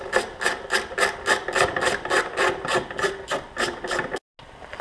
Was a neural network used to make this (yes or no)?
no